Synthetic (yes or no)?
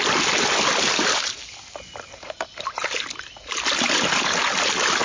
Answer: no